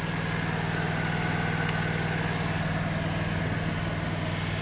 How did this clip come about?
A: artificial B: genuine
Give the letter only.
B